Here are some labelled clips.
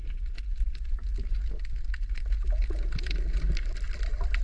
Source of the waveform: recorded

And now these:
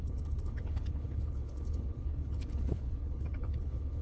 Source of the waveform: remade